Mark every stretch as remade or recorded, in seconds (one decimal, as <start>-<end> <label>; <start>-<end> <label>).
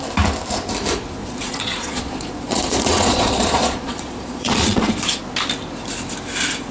0.0-1.2 recorded; 1.2-5.2 remade; 5.2-6.7 recorded